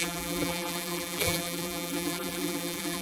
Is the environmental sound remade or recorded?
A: remade